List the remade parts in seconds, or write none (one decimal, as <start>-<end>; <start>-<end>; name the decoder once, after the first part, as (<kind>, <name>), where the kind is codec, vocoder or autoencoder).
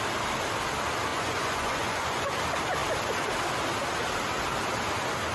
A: 1.1-2.3 (vocoder, Vocos)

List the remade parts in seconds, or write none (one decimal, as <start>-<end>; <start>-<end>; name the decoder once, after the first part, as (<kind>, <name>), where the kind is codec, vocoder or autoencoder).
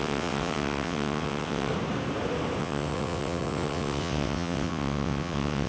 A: 0.0-1.7 (vocoder, WaveNeXt); 2.6-5.7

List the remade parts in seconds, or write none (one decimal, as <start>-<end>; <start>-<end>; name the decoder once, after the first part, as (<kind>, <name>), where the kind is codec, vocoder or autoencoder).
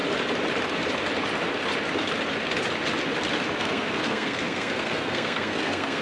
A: 3.6-6.0 (codec, SNAC)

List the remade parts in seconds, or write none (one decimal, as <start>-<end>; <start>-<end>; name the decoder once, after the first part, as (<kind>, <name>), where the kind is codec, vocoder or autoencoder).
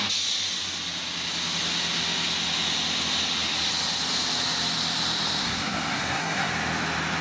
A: 5.4-6.5 (codec, SNAC)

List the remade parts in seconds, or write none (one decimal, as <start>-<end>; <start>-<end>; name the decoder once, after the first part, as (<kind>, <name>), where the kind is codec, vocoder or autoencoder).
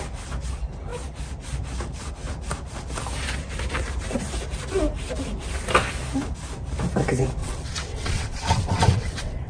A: 7.4-9.5 (vocoder, WaveNeXt)